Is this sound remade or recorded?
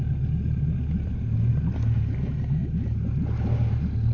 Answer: recorded